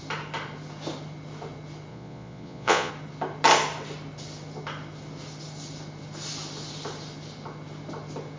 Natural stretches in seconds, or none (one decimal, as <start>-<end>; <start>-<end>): 0.0-1.9; 2.9-8.4